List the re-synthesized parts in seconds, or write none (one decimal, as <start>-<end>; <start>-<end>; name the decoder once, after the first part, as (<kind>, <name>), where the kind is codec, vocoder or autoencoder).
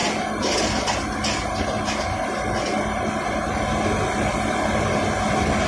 none